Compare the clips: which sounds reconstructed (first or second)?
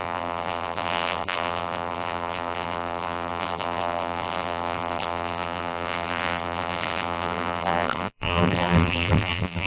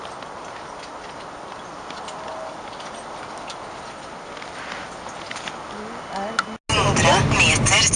first